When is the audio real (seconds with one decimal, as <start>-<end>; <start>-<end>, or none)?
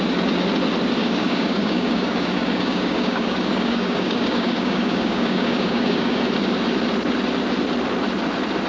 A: 0.0-1.0; 6.2-8.7